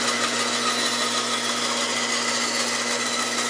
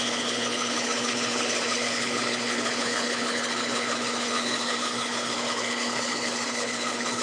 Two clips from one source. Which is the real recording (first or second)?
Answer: first